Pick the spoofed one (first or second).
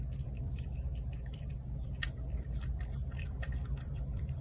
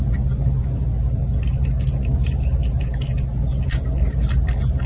first